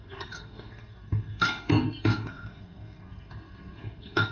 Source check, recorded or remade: remade